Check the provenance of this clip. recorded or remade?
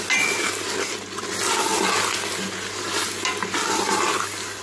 recorded